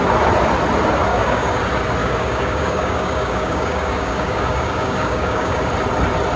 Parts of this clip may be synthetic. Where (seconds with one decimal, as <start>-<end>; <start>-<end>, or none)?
1.1-1.6; 2.0-5.7